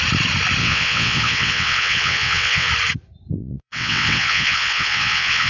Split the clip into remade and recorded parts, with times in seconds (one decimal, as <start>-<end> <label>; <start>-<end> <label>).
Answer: 0.0-0.6 recorded; 0.6-2.7 remade; 2.7-3.4 recorded; 3.4-5.5 remade